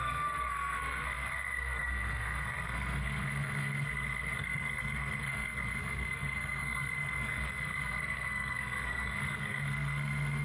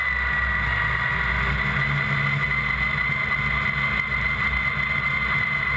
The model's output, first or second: first